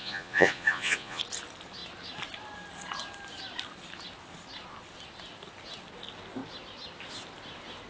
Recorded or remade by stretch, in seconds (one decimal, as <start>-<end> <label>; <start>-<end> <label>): 0.0-1.2 remade; 1.2-7.9 recorded